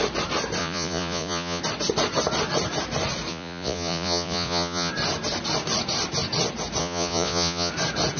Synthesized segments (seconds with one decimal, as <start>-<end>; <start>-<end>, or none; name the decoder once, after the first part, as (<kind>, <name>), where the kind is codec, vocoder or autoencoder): 0.6-1.6 (vocoder, Vocos); 3.3-4.9; 6.8-7.7